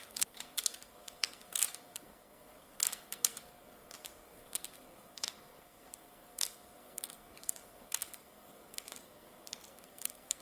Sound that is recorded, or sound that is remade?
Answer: remade